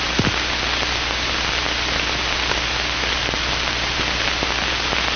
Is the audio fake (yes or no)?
no